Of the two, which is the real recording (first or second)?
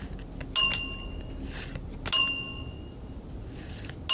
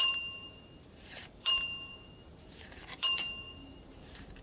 first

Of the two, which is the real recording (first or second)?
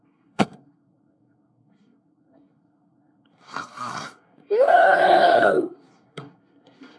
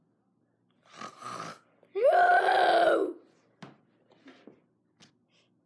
second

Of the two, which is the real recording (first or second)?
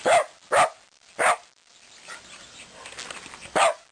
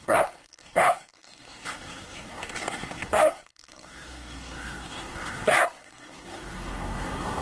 first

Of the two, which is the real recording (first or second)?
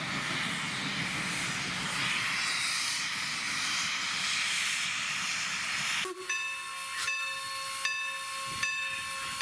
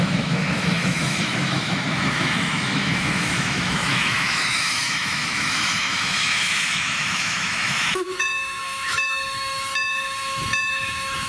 first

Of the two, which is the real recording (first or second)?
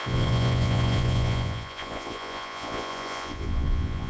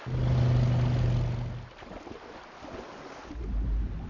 second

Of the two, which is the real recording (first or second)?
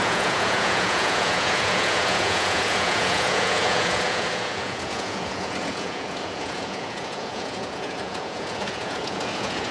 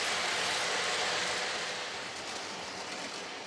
second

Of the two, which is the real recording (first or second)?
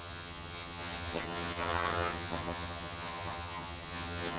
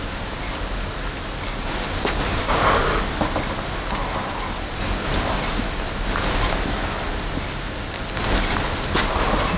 second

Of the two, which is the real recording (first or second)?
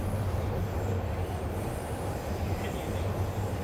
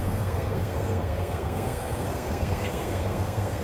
first